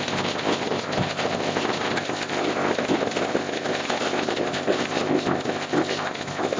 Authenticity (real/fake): fake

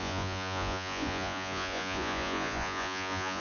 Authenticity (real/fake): fake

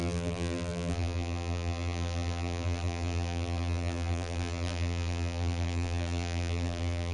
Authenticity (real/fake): fake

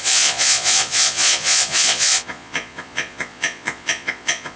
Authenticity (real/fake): fake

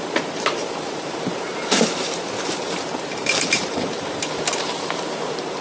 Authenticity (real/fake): fake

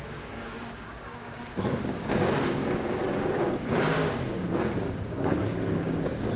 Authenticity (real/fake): fake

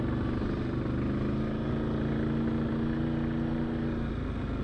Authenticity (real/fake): real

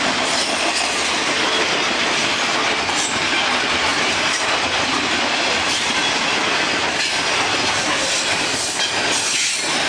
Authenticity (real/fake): real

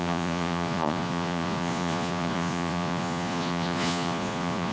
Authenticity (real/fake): fake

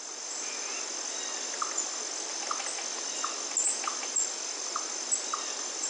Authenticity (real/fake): real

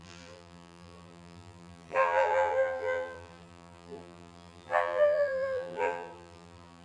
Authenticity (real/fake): fake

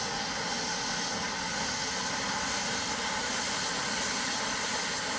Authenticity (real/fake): real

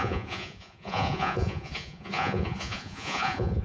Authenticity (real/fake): fake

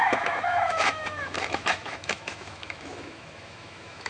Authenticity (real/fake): fake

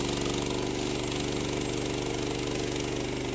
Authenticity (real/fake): real